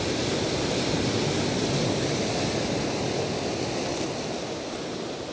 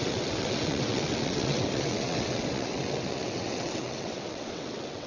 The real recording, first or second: first